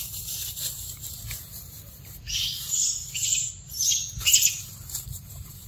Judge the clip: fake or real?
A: fake